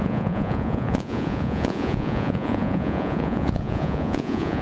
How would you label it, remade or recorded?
remade